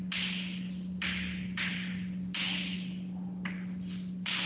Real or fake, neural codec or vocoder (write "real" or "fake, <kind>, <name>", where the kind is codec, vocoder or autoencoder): real